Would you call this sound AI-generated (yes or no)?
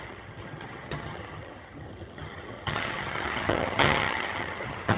yes